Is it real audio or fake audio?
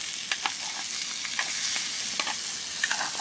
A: real